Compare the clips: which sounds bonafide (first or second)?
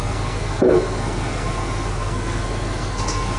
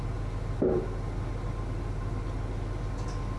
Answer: second